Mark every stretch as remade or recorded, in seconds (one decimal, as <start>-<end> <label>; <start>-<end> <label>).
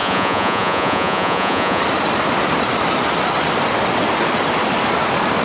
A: 0.0-1.8 remade; 1.8-5.4 recorded